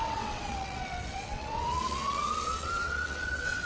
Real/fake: fake